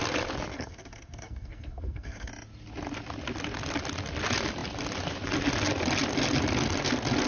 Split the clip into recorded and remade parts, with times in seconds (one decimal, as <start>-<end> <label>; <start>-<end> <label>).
0.0-0.5 recorded; 0.5-2.3 remade; 2.3-7.3 recorded